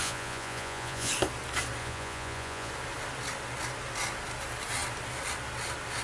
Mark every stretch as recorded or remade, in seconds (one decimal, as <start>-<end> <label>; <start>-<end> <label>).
0.0-1.1 remade; 1.1-1.8 recorded; 1.8-2.7 remade; 2.7-6.0 recorded